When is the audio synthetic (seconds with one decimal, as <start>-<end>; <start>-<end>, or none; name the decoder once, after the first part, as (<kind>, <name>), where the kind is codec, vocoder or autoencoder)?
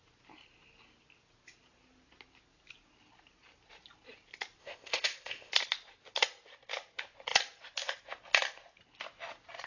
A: 4.6-5.5 (codec, ZipCodec)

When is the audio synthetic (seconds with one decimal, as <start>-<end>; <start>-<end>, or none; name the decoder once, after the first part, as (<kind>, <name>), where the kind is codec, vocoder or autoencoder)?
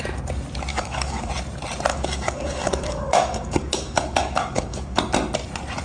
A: 0.7-1.3 (codec, DAC); 1.9-5.0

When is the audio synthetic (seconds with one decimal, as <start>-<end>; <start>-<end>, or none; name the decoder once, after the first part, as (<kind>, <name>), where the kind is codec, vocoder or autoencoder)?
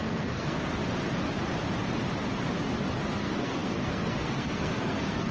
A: 0.0-0.8 (codec, SNAC); 3.1-5.3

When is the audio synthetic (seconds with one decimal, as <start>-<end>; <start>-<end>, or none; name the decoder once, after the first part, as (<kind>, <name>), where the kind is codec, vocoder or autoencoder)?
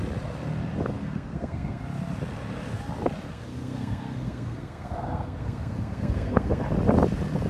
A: 1.0-1.8 (codec, SNAC); 3.3-6.6